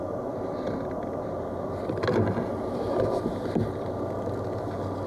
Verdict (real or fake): real